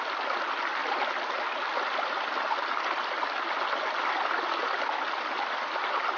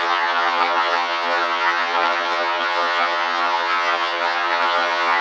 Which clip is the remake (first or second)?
second